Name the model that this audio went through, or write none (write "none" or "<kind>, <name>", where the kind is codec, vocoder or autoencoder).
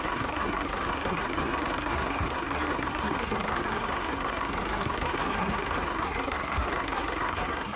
codec, SNAC